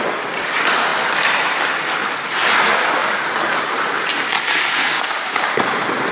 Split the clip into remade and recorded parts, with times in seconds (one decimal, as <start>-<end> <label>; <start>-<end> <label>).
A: 0.0-4.8 recorded; 4.8-5.4 remade; 5.4-6.1 recorded